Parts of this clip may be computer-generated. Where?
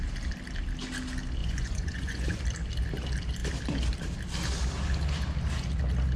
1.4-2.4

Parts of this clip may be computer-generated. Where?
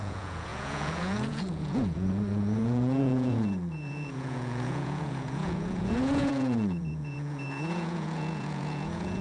0.0-9.2